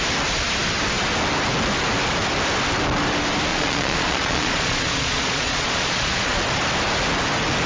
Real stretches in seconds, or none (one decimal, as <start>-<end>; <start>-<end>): 0.0-3.5; 6.4-7.7